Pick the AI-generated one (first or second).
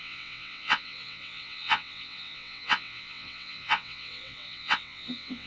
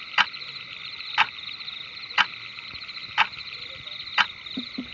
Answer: first